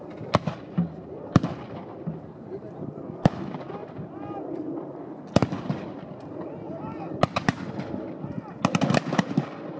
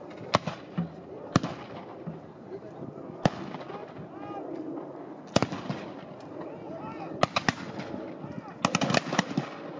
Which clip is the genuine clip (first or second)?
second